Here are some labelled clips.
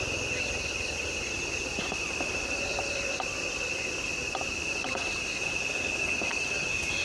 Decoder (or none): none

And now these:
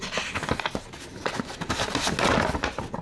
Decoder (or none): none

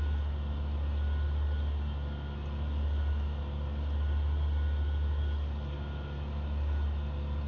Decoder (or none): none